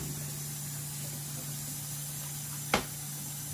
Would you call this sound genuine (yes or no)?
yes